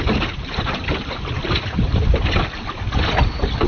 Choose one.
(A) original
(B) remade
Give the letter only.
A